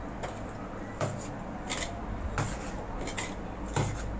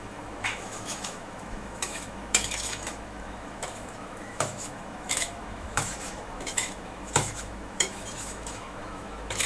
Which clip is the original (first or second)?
first